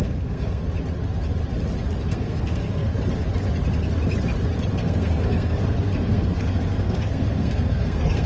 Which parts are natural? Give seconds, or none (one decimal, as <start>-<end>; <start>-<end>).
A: 0.6-2.1; 2.9-4.7